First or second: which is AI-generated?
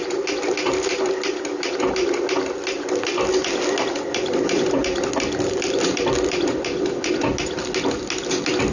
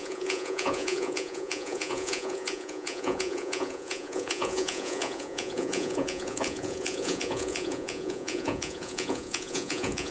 second